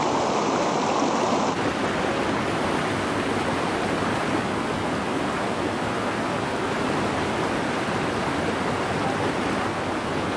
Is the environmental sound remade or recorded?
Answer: recorded